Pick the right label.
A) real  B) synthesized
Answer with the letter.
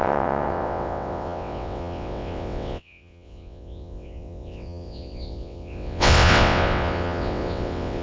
B